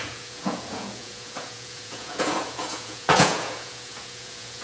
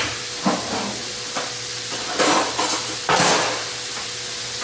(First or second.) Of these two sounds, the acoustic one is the second